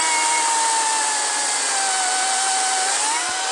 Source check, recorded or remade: recorded